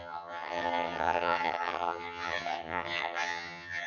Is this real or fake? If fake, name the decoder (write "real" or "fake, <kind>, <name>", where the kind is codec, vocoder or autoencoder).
fake, vocoder, HiFi-GAN